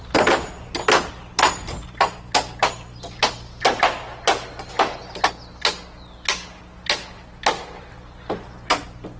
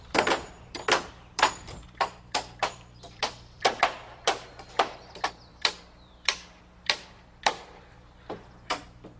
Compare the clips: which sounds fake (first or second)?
second